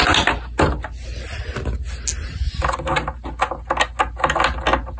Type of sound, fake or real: real